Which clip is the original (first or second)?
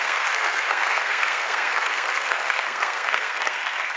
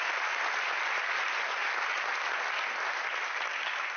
second